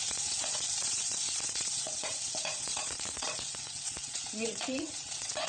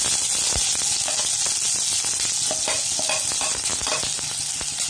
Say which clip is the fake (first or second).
first